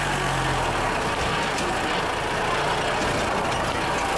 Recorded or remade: recorded